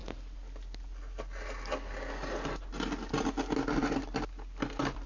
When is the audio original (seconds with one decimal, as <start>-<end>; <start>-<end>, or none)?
0.0-5.1